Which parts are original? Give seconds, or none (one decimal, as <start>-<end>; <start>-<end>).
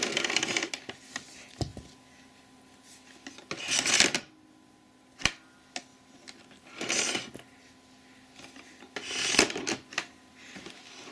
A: 0.0-11.1